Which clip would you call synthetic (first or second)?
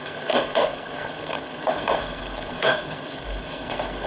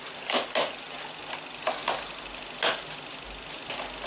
first